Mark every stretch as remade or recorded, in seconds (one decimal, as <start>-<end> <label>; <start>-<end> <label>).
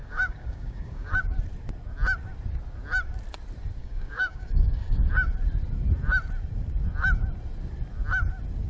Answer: 0.0-1.2 remade; 1.2-3.8 recorded; 3.8-5.1 remade; 5.1-8.7 recorded